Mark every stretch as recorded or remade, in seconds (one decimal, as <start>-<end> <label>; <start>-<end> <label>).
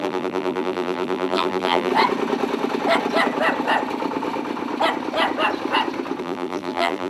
0.0-1.9 remade; 1.9-6.2 recorded; 6.2-7.1 remade